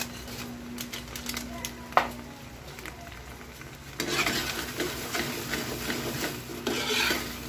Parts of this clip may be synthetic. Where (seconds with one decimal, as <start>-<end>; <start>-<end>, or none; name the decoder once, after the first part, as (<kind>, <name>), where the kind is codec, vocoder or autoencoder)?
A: 4.4-5.1 (vocoder, BigVGAN v2)